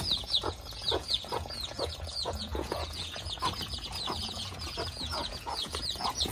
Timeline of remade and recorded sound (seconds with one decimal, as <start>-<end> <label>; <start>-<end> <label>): 0.0-6.3 remade